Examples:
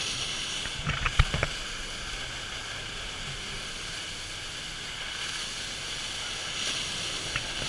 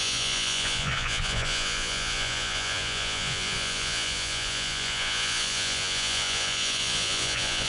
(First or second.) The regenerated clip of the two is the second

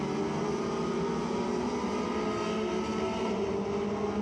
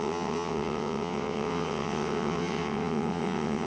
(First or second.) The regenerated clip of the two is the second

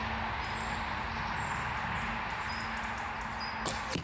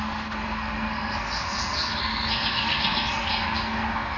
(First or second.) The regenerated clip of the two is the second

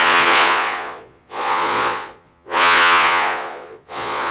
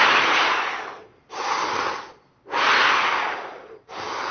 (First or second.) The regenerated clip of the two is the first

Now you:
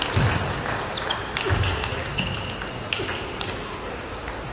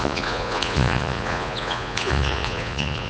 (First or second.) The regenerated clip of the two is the second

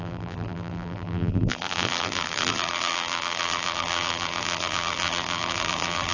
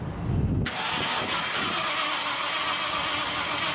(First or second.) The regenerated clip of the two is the first